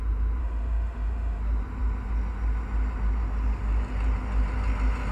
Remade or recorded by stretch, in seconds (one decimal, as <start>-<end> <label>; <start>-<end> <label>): 0.0-0.4 recorded; 0.4-1.4 remade; 1.4-5.1 recorded